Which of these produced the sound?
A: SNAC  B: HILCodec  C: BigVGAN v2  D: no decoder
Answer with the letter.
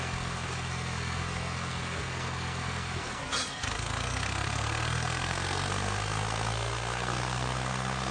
A